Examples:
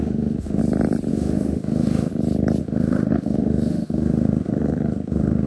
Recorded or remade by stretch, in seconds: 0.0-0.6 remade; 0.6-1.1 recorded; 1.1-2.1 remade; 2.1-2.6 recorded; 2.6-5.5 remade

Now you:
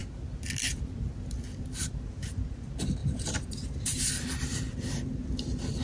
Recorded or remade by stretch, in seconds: 0.0-5.8 recorded